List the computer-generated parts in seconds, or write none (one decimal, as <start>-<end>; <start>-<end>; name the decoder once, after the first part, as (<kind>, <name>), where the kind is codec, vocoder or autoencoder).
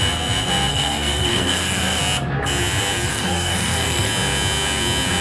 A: 0.7-2.0 (codec, SNAC); 3.1-4.1